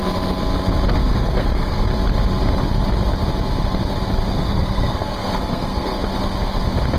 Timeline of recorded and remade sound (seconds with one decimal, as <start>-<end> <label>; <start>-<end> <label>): 0.0-0.9 recorded; 0.9-1.9 remade; 1.9-4.3 recorded; 4.3-6.0 remade; 6.0-7.0 recorded